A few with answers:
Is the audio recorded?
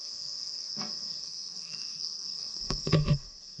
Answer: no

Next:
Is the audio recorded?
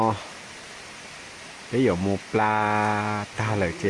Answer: yes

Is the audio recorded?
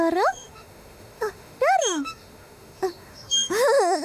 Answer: no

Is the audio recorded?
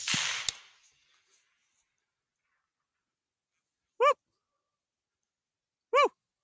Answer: yes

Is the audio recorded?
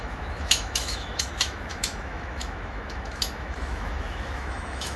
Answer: no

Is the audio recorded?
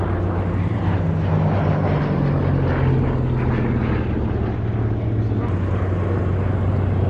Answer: yes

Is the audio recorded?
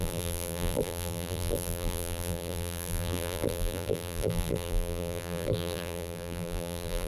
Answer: no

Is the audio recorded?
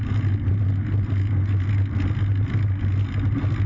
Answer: yes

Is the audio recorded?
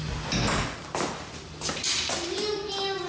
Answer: yes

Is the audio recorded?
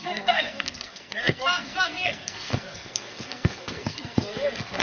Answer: no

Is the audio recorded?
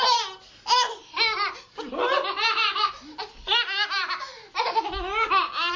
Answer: yes